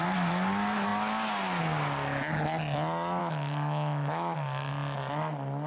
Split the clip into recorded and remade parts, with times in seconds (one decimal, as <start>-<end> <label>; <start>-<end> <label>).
0.0-3.2 recorded; 3.2-4.7 remade; 4.7-5.7 recorded

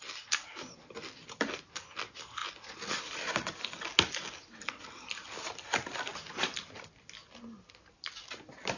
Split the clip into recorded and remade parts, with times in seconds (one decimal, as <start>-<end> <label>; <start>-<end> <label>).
0.0-8.8 recorded

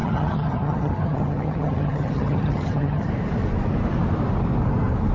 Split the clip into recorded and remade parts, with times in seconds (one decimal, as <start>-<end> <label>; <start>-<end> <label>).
0.0-3.1 remade; 3.1-5.1 recorded

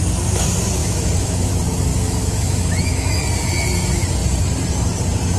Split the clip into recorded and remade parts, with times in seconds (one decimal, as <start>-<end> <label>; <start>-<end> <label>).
0.0-0.8 recorded; 0.8-1.5 remade; 1.5-1.9 recorded; 1.9-3.2 remade; 3.2-5.4 recorded

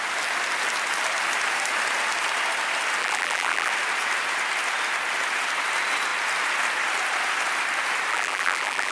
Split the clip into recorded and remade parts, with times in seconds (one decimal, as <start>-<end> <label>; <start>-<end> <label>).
0.0-3.0 recorded; 3.0-3.7 remade; 3.7-8.1 recorded; 8.1-8.9 remade